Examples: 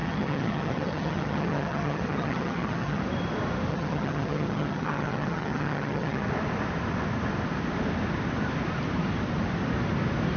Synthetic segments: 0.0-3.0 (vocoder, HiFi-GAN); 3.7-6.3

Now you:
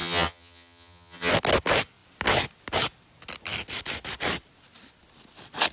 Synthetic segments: 0.0-1.3 (vocoder, HiFi-GAN)

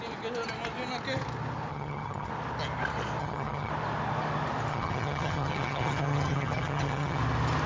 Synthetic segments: 1.7-2.3 (vocoder, HiFi-GAN); 3.2-3.7; 4.7-7.2

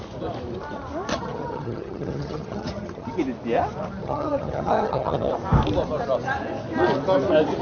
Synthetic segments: 1.1-3.2 (vocoder, HiFi-GAN); 4.0-5.3

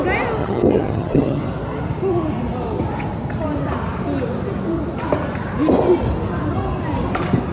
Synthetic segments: 0.4-1.4 (vocoder, HiFi-GAN)

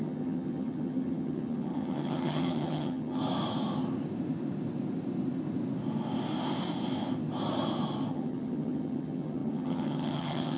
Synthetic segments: 0.0-3.2 (vocoder, HiFi-GAN); 8.1-10.6